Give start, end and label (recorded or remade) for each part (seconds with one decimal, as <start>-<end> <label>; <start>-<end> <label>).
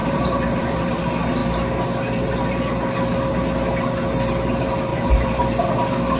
0.0-0.9 remade; 0.9-4.9 recorded; 4.9-5.4 remade; 5.4-6.2 recorded